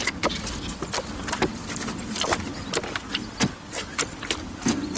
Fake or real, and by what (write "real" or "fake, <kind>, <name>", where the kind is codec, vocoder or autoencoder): real